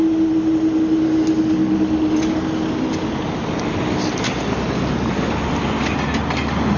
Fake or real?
real